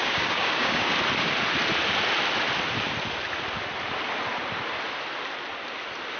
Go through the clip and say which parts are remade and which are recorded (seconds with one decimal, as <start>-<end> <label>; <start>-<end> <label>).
0.0-0.9 remade; 0.9-6.2 recorded